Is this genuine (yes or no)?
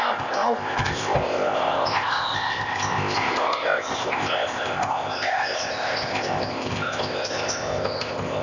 no